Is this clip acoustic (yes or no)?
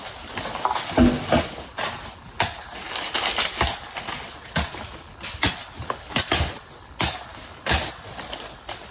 yes